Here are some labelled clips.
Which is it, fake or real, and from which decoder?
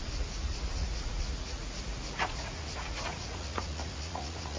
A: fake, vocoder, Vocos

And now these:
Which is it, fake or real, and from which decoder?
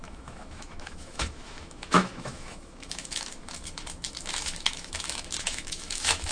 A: fake, autoencoder, DAC-VAE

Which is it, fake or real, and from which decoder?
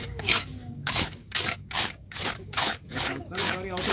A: fake, codec, DAC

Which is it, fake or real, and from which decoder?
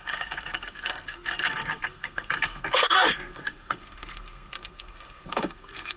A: fake, codec, SNAC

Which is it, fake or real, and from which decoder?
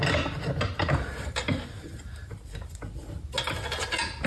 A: real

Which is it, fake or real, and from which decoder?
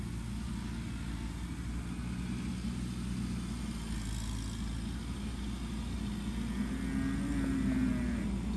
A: real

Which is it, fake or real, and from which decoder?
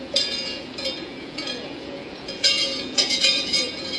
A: fake, vocoder, Vocos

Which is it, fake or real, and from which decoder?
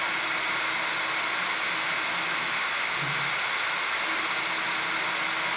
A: real